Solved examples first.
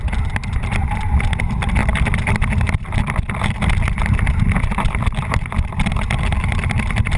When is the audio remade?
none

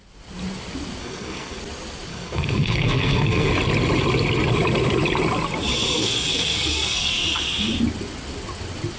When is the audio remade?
1.0-1.6 (codec, SNAC); 2.1-3.5; 6.0-7.7

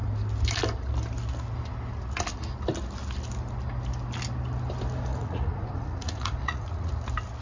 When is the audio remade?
5.1-6.9 (vocoder, Vocos)

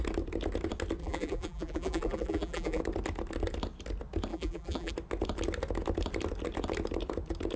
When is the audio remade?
1.0-2.8 (vocoder, BigVGAN v2); 4.3-4.9

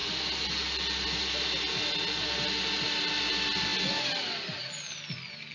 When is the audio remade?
none

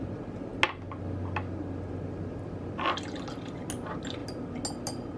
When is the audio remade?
none

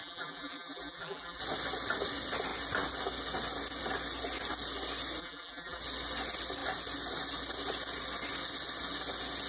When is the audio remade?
0.0-1.4 (vocoder, BigVGAN v2); 5.2-5.8